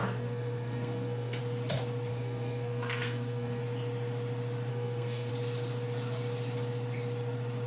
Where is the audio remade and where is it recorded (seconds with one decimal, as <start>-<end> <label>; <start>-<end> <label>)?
0.0-1.4 remade; 1.4-2.1 recorded; 2.1-3.6 remade; 3.6-4.7 recorded; 4.7-5.3 remade; 5.3-7.7 recorded